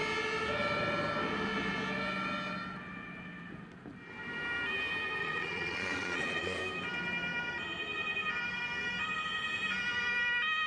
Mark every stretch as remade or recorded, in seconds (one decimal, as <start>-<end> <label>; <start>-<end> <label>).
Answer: 0.0-5.2 recorded; 5.2-6.6 remade; 6.6-10.7 recorded